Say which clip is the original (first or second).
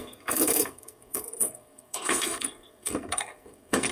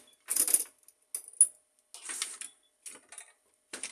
second